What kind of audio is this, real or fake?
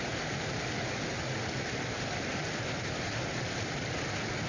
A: real